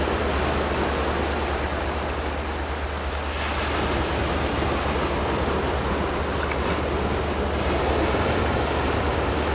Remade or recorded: recorded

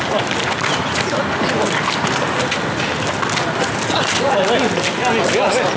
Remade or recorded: recorded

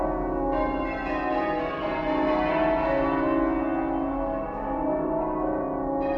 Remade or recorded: recorded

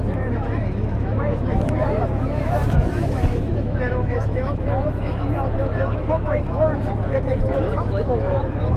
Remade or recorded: remade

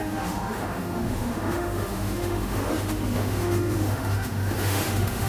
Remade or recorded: remade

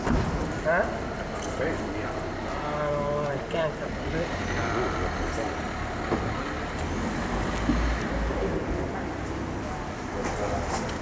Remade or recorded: recorded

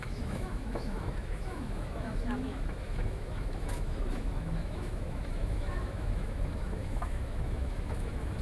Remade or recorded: remade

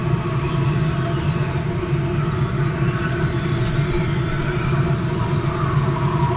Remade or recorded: recorded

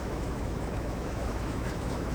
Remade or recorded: remade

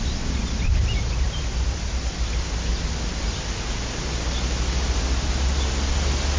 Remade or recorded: recorded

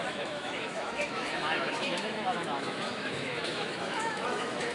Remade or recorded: remade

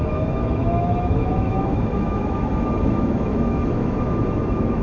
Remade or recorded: remade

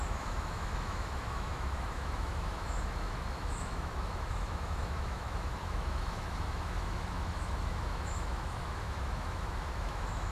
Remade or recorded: remade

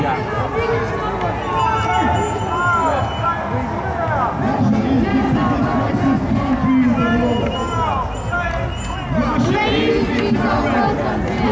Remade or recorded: recorded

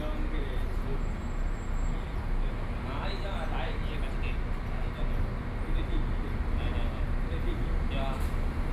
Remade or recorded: recorded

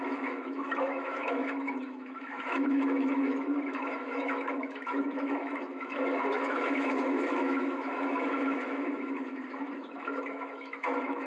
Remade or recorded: remade